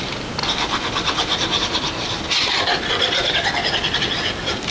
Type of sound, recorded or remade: recorded